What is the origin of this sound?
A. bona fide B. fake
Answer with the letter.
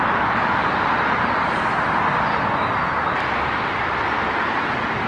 A